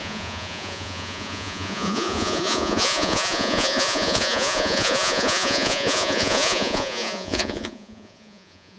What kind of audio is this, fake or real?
fake